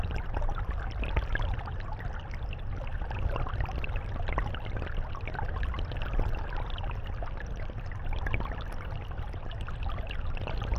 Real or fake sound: real